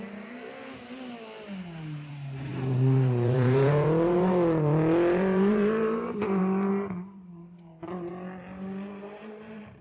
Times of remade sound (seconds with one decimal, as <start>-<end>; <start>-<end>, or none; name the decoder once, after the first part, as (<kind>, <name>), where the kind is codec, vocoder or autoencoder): 0.0-0.6 (vocoder, BigVGAN v2); 2.1-8.1; 9.0-9.8